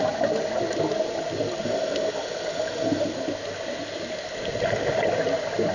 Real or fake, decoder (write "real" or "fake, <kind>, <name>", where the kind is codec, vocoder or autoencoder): real